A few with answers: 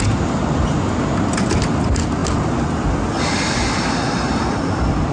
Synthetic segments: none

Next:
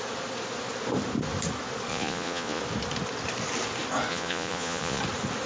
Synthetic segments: 1.9-2.6 (vocoder, Vocos); 4.1-5.0